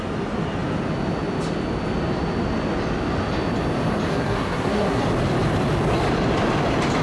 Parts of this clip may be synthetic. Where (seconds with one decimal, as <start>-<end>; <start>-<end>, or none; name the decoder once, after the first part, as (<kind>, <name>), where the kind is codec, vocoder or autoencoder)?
4.1-5.0 (codec, SNAC)

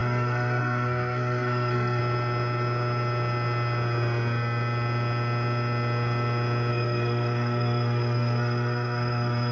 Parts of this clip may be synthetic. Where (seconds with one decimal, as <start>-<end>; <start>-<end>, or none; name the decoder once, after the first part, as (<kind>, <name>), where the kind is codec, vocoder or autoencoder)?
0.0-2.0 (codec, SNAC); 6.7-9.5

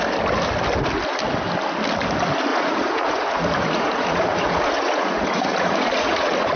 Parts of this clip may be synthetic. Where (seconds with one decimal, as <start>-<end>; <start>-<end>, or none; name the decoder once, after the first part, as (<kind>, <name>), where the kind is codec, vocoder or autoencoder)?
2.5-6.6 (vocoder, Vocos)

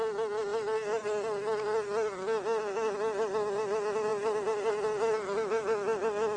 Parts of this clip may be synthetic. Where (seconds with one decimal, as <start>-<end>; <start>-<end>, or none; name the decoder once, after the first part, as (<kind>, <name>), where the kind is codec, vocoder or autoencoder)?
none

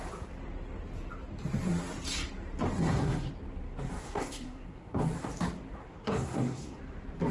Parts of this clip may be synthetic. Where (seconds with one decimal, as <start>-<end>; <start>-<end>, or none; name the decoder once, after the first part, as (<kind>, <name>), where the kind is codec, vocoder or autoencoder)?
2.8-3.3 (codec, SNAC); 4.0-5.0; 5.8-6.8

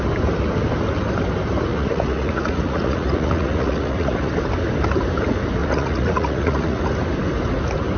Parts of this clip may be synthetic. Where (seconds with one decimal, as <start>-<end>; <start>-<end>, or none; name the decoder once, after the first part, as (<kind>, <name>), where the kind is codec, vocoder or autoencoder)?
1.7-4.3 (vocoder, Vocos); 5.6-6.8

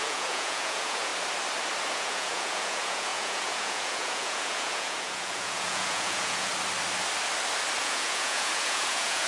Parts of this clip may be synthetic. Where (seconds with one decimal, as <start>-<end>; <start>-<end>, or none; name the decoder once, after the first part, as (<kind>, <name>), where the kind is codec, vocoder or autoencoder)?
0.0-1.1 (vocoder, Vocos); 1.9-6.5; 7.8-9.3